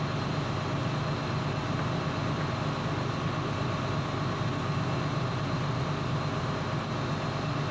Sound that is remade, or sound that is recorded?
recorded